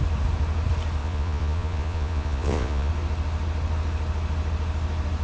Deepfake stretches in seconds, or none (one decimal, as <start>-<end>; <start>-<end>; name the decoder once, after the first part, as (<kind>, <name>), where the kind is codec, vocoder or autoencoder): 1.0-2.9 (vocoder, Vocos)

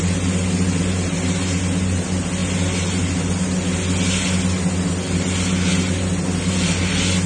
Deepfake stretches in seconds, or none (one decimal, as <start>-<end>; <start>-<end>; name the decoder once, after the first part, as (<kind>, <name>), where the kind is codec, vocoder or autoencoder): none

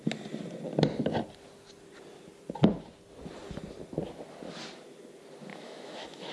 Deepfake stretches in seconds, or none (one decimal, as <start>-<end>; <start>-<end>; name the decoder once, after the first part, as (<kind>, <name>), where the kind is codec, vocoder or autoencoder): 5.5-6.3 (autoencoder, DAC-VAE)

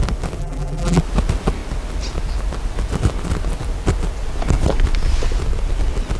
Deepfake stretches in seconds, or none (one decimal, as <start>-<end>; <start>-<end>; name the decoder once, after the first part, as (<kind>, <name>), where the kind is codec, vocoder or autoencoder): 0.4-1.0 (vocoder, BigVGAN v2)

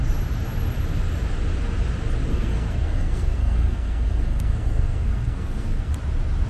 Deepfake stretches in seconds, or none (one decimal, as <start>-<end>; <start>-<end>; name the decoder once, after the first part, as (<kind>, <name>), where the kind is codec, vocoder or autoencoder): 2.3-5.9 (codec, SNAC)

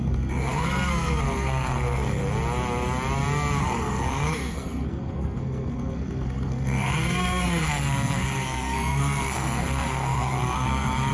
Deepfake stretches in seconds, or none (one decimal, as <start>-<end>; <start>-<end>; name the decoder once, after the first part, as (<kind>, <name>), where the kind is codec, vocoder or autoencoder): 0.0-2.2 (codec, SNAC); 3.6-11.1

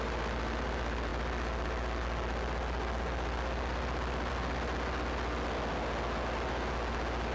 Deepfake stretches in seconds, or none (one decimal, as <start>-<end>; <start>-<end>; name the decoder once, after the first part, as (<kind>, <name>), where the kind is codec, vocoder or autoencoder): none